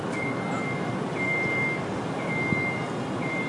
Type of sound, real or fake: real